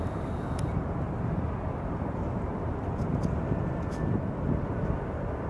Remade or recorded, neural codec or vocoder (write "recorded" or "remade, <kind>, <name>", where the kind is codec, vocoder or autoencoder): recorded